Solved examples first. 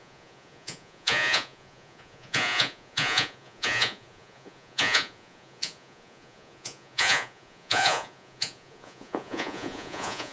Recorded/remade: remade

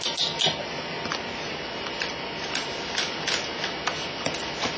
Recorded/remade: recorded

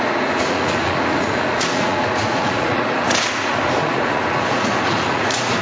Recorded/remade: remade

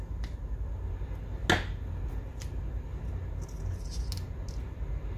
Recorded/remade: recorded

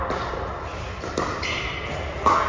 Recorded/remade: recorded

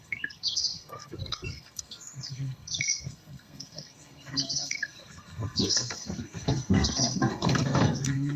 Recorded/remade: remade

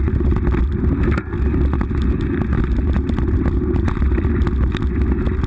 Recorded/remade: recorded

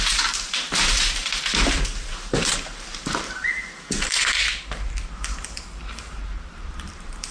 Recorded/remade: remade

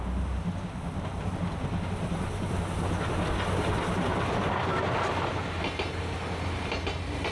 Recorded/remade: recorded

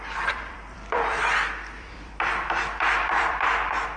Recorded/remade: remade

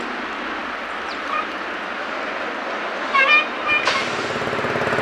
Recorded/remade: recorded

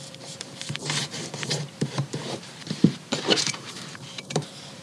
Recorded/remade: remade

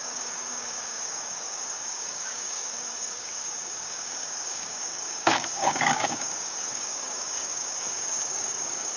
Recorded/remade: remade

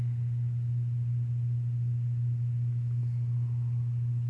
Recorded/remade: recorded